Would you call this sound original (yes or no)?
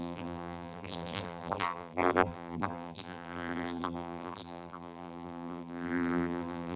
no